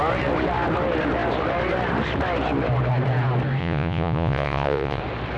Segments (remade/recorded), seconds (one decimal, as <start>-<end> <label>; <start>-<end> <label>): 0.0-3.6 recorded; 3.6-5.0 remade; 5.0-5.4 recorded